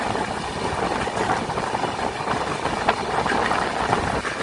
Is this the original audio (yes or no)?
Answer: yes